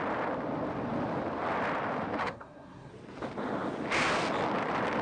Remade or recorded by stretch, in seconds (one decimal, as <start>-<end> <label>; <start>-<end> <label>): 0.0-2.2 recorded; 2.2-2.9 remade; 2.9-5.0 recorded